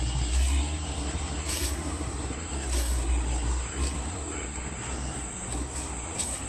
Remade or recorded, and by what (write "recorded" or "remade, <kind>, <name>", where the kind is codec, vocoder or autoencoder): remade, codec, SNAC